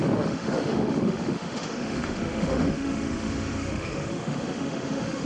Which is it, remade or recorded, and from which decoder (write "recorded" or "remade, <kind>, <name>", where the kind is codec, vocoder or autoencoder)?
remade, autoencoder, DAC-VAE